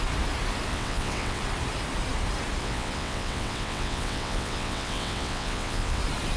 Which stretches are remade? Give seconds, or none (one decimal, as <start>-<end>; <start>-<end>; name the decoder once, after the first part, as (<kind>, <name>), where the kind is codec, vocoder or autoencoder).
0.7-1.4 (vocoder, WaveNeXt); 2.6-6.0